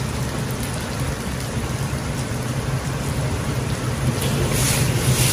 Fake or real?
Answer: fake